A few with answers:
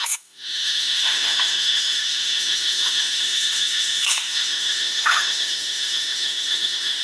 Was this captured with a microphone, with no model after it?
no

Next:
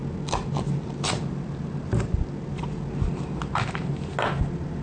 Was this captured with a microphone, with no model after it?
yes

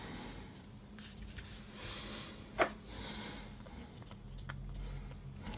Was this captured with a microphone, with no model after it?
yes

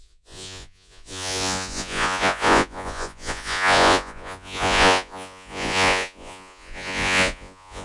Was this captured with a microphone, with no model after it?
no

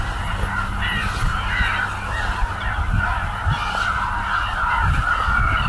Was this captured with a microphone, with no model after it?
yes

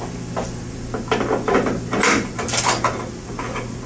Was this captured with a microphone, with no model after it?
yes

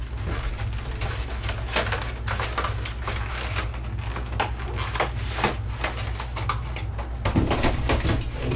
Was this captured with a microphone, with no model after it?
yes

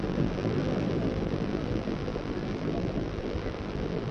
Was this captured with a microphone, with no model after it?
no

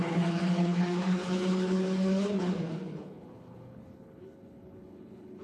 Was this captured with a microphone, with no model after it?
no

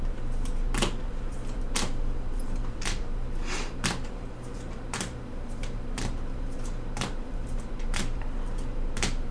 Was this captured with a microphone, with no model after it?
no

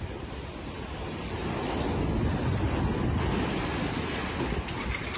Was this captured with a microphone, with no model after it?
yes